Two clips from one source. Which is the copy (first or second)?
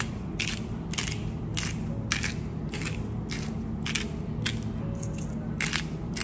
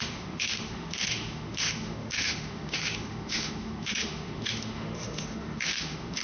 second